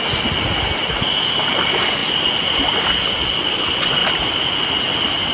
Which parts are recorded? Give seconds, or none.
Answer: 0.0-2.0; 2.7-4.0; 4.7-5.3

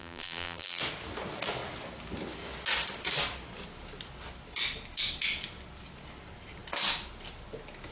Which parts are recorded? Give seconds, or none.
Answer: 0.8-7.9

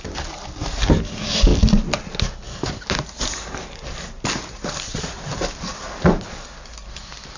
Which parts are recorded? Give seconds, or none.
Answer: 0.0-7.4

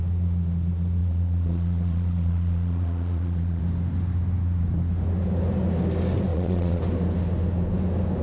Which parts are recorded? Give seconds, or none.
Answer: 0.0-1.0; 3.6-6.3; 6.8-8.2

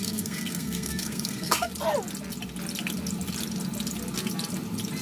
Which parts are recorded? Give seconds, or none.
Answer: 1.7-5.0

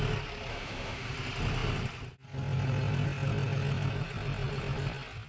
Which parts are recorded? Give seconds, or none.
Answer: 0.0-0.5; 1.1-5.3

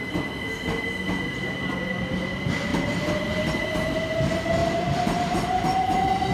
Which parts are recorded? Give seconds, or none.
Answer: 0.0-4.6; 5.6-6.3